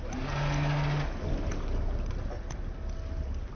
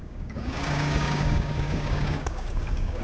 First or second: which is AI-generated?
second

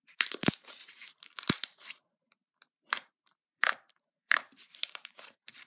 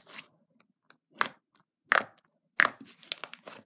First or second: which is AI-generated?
first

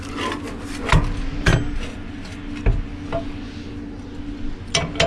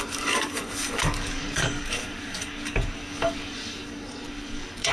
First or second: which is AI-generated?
second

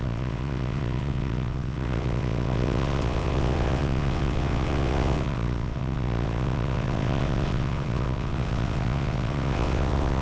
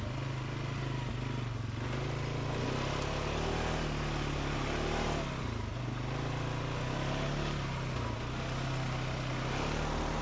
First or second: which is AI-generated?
first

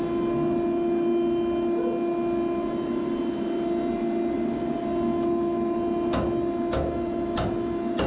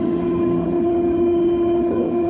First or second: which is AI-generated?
second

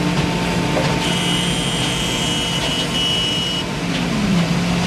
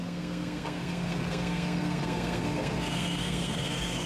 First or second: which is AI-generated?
second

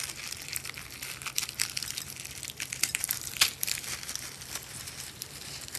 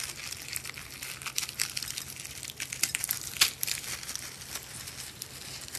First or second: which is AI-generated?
first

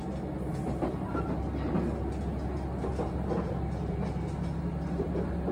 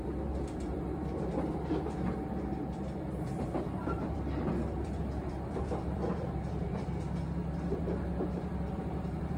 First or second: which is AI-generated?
second